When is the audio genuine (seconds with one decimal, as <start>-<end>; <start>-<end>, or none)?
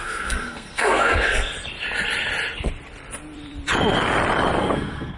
1.5-4.6